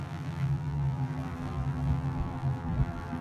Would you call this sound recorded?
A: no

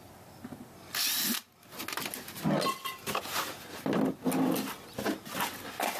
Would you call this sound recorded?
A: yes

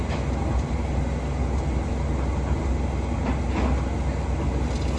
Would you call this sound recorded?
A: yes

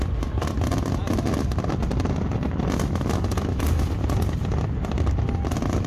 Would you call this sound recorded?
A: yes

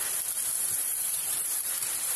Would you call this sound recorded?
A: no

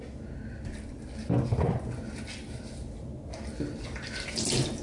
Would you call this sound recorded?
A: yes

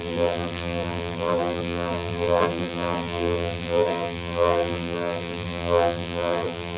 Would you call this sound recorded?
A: no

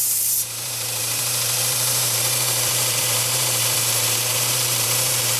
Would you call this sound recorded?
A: no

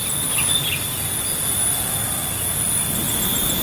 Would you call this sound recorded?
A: yes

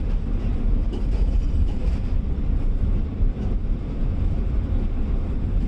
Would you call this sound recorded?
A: no